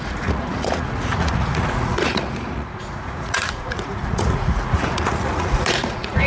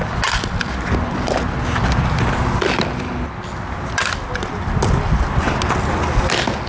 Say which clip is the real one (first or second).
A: second